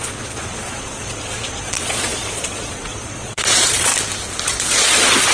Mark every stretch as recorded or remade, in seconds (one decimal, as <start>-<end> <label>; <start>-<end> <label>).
0.0-3.9 remade; 3.9-4.5 recorded; 4.5-5.3 remade